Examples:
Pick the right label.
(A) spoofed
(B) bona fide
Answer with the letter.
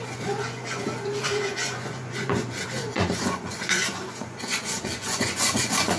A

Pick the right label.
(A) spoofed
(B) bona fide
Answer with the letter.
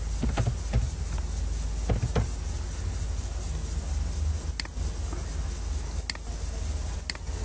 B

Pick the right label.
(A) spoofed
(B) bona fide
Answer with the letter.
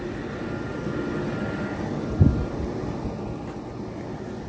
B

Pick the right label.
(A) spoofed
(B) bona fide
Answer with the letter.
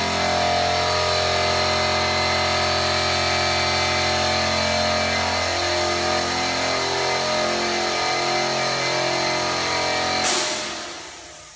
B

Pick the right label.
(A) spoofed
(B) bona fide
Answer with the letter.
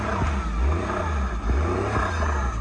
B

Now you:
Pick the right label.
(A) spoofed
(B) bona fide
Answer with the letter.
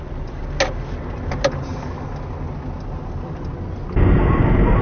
B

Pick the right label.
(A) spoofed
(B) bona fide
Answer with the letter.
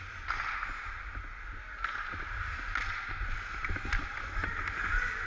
B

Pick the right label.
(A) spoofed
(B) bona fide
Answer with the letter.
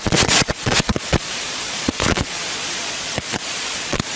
A